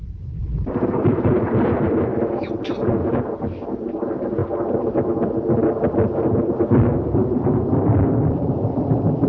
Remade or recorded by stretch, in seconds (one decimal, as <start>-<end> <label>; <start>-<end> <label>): 0.0-2.1 remade; 2.1-3.9 recorded; 3.9-4.4 remade; 4.4-6.8 recorded; 6.8-9.3 remade